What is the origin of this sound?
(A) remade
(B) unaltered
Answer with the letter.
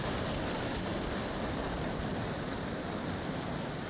B